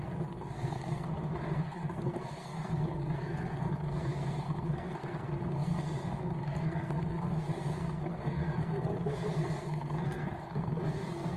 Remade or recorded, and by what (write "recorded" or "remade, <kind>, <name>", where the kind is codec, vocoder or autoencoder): remade, codec, SNAC